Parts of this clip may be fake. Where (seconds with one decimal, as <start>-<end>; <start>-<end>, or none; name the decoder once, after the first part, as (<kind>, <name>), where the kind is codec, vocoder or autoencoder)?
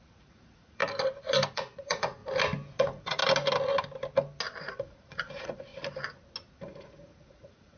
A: 0.0-0.8 (vocoder, Vocos); 1.5-2.2; 2.8-3.2; 4.6-5.7; 6.5-7.8